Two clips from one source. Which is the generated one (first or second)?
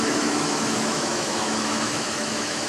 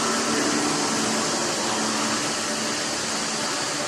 first